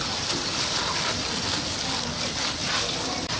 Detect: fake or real real